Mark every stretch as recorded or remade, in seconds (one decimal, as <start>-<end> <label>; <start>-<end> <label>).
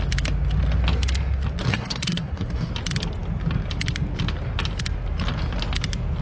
0.0-1.7 recorded; 1.7-2.7 remade; 2.7-6.2 recorded